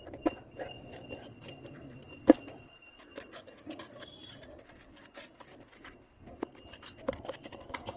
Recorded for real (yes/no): yes